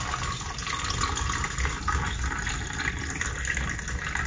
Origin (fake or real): real